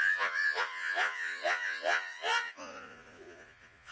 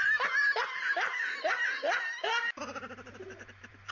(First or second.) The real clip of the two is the second